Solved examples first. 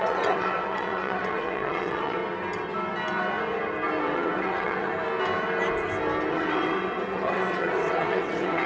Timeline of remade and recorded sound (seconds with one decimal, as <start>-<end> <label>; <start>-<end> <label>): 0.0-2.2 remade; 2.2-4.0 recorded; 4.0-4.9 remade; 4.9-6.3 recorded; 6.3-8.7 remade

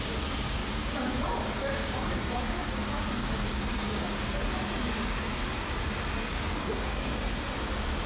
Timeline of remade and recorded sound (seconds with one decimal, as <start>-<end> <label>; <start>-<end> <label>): 0.0-0.6 recorded; 0.6-2.4 remade; 2.4-3.2 recorded; 3.2-4.3 remade; 4.3-6.3 recorded; 6.3-7.3 remade; 7.3-8.1 recorded

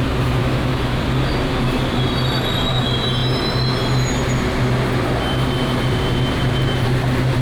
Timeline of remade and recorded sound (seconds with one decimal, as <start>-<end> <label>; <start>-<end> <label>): 0.0-0.4 recorded; 0.4-1.0 remade; 1.0-7.4 recorded

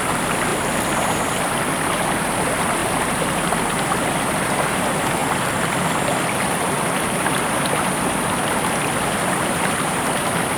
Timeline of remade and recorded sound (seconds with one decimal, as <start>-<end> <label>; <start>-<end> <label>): 0.0-0.5 recorded; 0.5-1.5 remade; 1.5-2.8 recorded; 2.8-3.8 remade; 3.8-10.6 recorded